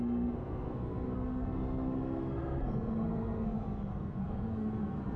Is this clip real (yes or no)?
no